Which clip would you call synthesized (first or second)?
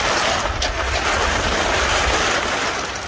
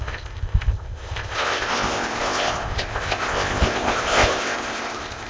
second